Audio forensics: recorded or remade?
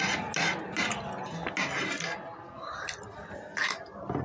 recorded